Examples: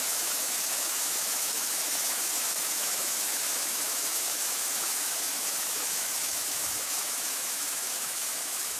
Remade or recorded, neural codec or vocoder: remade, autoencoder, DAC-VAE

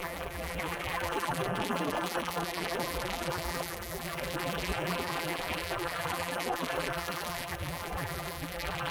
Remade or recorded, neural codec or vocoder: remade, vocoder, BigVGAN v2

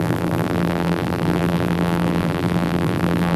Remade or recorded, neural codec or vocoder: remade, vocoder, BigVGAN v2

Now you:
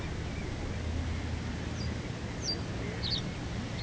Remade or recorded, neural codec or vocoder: recorded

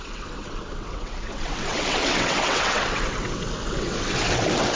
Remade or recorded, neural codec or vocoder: remade, vocoder, WaveNeXt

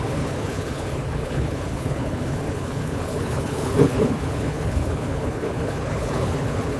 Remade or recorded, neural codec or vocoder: remade, codec, HILCodec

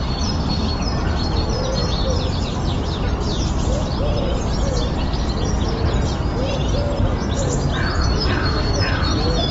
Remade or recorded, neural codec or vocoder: recorded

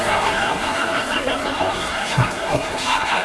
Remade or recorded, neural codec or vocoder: remade, codec, SNAC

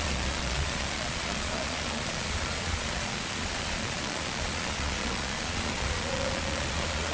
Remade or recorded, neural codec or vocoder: remade, vocoder, Vocos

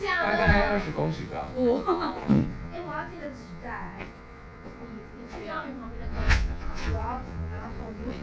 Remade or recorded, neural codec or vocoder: remade, vocoder, Vocos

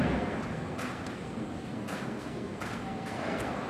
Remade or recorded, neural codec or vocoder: remade, codec, SNAC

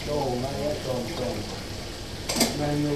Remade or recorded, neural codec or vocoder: recorded